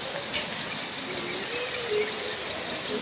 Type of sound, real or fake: real